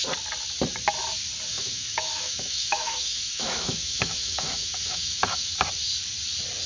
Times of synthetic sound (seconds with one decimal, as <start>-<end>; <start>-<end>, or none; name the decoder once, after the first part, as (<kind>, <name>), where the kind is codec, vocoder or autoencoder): 1.5-5.5 (autoencoder, DAC-VAE)